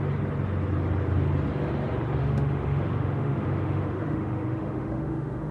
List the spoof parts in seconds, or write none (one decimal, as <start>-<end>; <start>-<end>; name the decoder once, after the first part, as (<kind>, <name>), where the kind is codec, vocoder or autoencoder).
2.2-5.5 (autoencoder, DAC-VAE)